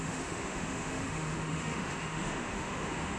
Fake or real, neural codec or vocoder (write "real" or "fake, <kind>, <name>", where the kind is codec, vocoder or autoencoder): fake, autoencoder, DAC-VAE